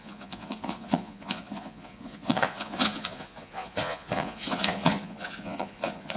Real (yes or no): no